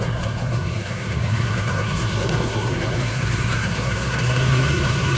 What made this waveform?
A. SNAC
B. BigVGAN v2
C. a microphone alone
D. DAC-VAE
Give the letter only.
A